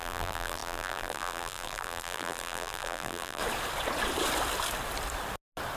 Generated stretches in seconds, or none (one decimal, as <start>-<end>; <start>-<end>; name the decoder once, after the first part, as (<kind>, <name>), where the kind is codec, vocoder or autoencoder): 0.0-3.4 (vocoder, BigVGAN v2)